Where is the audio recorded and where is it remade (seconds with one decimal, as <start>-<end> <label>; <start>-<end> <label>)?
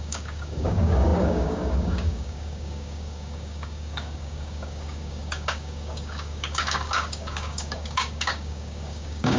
0.0-9.4 remade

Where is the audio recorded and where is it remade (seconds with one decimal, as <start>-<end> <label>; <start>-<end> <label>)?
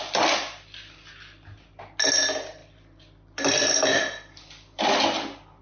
0.0-5.6 recorded